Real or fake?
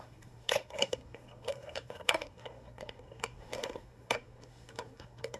fake